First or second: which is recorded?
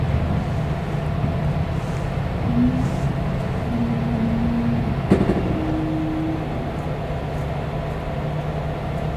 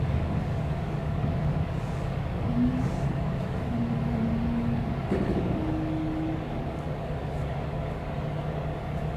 first